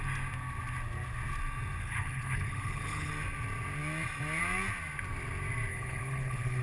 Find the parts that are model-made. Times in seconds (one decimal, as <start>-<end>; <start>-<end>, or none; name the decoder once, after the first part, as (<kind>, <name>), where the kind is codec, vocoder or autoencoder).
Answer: 1.8-3.1 (codec, HILCodec); 5.7-6.6